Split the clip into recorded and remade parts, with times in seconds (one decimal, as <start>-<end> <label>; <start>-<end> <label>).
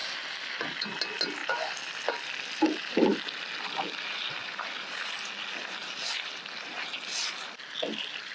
0.0-8.3 recorded